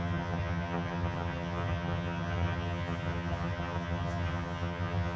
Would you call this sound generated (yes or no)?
yes